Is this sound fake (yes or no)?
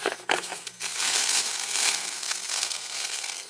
yes